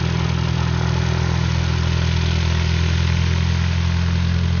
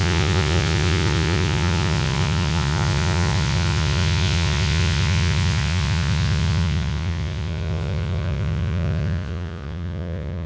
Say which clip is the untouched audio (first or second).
first